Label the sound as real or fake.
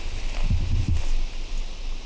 real